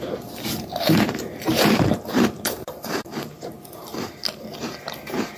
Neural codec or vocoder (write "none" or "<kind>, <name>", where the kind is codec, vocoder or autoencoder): vocoder, BigVGAN v2